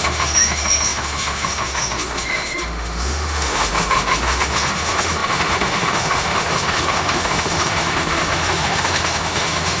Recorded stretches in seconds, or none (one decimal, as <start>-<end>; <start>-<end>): none